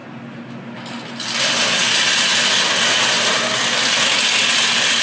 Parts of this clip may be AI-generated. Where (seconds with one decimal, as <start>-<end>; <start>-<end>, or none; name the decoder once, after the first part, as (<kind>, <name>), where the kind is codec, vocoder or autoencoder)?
none

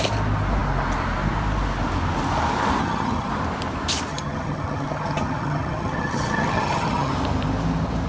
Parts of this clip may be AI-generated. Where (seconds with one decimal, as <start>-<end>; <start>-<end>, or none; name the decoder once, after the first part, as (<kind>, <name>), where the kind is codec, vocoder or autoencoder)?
2.8-3.3 (vocoder, HiFi-GAN); 4.1-7.1

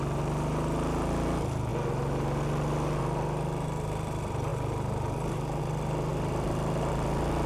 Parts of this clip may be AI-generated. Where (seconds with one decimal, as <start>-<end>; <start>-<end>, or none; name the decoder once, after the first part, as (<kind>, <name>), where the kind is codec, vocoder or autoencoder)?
none

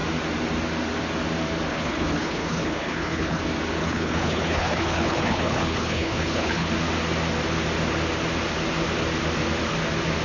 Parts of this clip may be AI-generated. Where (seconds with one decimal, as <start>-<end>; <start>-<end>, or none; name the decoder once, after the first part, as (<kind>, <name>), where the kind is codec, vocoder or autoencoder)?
1.7-3.4 (codec, HILCodec); 3.8-6.7

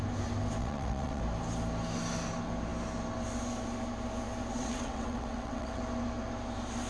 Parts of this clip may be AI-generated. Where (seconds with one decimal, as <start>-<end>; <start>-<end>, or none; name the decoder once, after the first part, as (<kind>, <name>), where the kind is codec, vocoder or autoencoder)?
0.6-1.2 (vocoder, WaveNeXt); 4.5-5.8

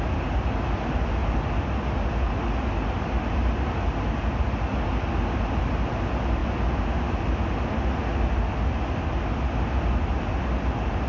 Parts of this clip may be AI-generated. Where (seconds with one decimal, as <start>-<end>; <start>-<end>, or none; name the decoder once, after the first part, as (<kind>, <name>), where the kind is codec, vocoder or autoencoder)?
none

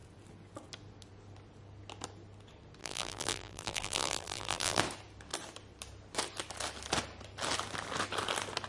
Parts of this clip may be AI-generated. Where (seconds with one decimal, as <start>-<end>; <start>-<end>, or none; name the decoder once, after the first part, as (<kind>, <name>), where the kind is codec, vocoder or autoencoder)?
2.8-4.8 (vocoder, BigVGAN v2)

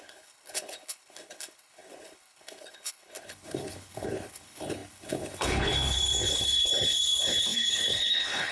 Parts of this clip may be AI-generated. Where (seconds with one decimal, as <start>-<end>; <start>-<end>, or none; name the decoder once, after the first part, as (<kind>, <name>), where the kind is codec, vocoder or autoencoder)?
0.0-8.5 (codec, HILCodec)